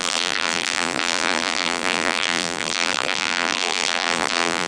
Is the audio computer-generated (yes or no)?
yes